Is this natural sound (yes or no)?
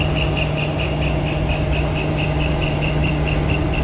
yes